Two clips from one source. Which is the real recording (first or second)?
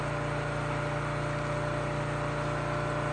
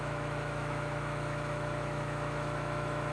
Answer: first